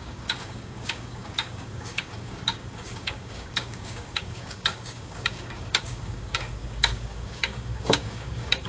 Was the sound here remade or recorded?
remade